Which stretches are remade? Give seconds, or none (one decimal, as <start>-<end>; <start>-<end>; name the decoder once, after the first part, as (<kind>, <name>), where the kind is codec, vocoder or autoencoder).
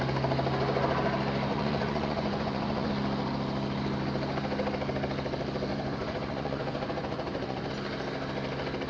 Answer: 1.5-2.9 (vocoder, Vocos); 5.7-7.7